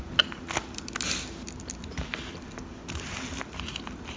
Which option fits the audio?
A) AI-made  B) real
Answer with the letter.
B